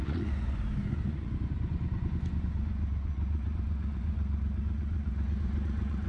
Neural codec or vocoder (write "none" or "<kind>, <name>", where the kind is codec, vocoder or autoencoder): vocoder, Vocos